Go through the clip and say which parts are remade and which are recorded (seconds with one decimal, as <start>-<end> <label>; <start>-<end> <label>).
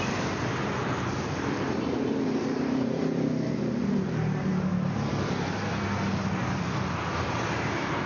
0.0-4.5 remade; 4.5-6.4 recorded; 6.4-8.1 remade